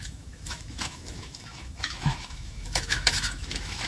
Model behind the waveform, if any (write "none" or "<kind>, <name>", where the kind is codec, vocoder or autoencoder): autoencoder, DAC-VAE